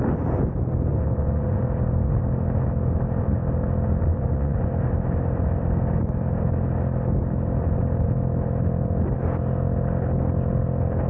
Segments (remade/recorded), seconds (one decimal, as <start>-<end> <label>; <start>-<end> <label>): 0.0-0.9 recorded; 0.9-1.6 remade; 1.6-4.1 recorded; 4.1-4.7 remade; 4.7-11.1 recorded